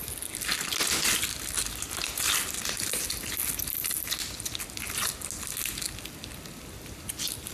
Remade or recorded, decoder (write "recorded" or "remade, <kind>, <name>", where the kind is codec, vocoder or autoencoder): recorded